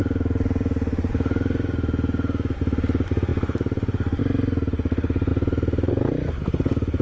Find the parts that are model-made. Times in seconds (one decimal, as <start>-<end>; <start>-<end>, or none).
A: 0.0-1.1; 3.3-4.2